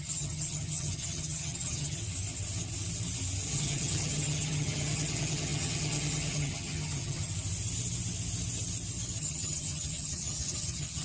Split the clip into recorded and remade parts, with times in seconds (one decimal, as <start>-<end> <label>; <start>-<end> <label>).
0.0-2.0 remade; 2.0-3.5 recorded; 3.5-7.3 remade; 7.3-9.2 recorded; 9.2-11.0 remade